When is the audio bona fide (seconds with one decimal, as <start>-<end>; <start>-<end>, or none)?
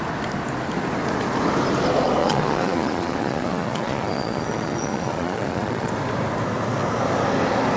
0.0-2.2; 5.9-7.8